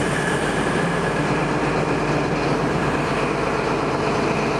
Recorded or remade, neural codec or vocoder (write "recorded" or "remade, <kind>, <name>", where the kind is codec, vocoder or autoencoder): recorded